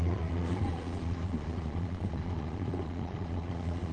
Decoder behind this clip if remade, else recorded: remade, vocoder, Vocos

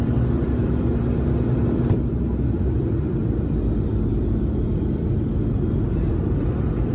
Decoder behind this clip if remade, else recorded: remade, vocoder, BigVGAN v2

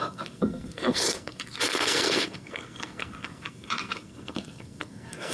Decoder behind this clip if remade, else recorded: remade, codec, SNAC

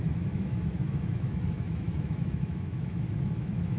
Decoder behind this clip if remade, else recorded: remade, autoencoder, DAC-VAE